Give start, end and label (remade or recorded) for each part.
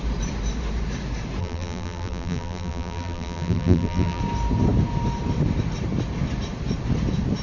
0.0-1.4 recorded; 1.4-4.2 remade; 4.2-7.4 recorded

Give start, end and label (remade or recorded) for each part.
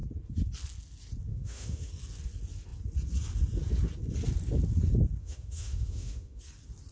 0.0-1.3 recorded; 1.3-1.9 remade; 1.9-5.2 recorded; 5.2-6.4 remade; 6.4-6.9 recorded